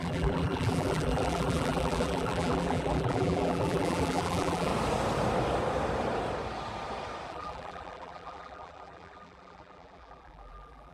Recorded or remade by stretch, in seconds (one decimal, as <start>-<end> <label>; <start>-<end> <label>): 0.0-4.7 remade; 4.7-7.3 recorded; 7.3-10.9 remade

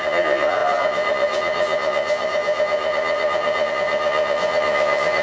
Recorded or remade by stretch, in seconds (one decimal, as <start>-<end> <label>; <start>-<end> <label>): 0.0-5.2 remade

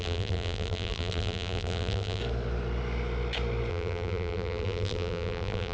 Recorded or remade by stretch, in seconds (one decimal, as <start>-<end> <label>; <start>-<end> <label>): 0.0-2.2 remade; 2.2-3.7 recorded; 3.7-5.7 remade

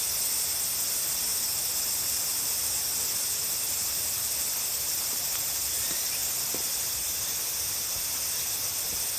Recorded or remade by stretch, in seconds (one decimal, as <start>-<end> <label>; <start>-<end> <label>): 0.0-9.2 recorded